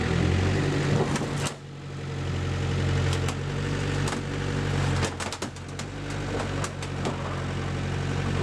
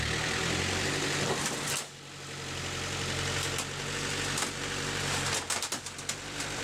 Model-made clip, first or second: second